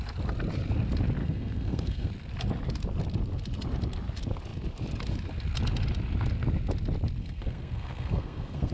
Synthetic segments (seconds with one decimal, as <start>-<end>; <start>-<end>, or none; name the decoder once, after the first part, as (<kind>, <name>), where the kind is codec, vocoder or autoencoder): 1.2-2.1 (codec, SNAC); 7.2-8.7